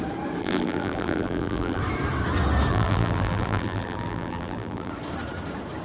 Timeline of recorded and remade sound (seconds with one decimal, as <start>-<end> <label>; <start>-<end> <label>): 0.0-0.4 recorded; 0.4-1.8 remade; 1.8-2.7 recorded; 2.7-4.9 remade; 4.9-5.8 recorded